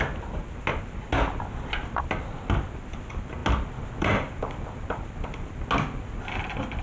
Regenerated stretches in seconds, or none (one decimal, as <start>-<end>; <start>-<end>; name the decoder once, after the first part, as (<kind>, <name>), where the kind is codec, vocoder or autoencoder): none